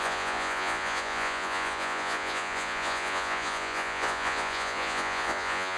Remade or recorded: remade